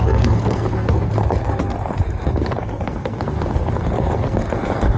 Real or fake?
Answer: fake